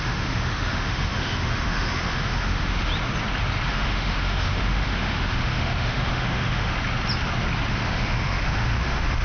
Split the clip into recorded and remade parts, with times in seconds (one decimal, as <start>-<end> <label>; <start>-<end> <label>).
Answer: 0.0-2.9 remade; 2.9-3.7 recorded; 3.7-6.7 remade; 6.7-7.7 recorded; 7.7-9.2 remade